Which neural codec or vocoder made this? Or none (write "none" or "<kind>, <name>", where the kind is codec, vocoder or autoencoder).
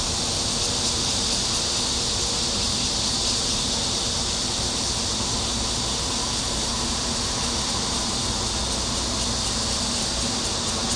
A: none